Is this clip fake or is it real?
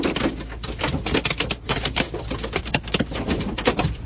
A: fake